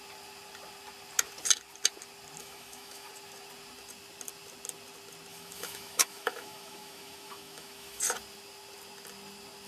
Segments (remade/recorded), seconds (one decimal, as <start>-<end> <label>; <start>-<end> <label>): 0.0-2.4 recorded; 2.4-3.1 remade; 3.1-5.3 recorded; 5.3-8.0 remade; 8.0-9.7 recorded